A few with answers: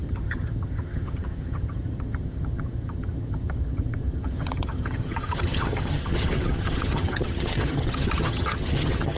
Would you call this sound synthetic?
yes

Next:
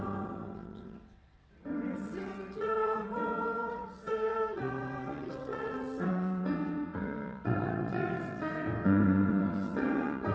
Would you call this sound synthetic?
yes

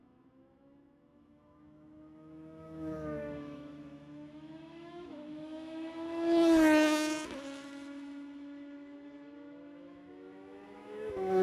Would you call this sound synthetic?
yes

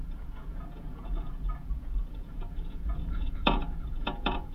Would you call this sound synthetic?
yes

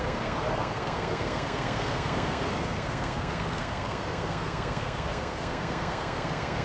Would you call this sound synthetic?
yes